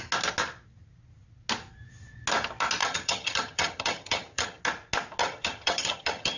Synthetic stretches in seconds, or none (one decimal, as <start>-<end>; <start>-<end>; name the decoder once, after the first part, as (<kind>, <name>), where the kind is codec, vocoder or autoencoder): 2.8-4.6 (vocoder, HiFi-GAN); 5.2-6.4